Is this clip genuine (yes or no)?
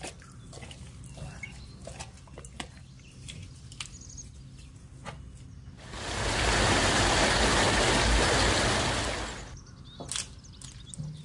yes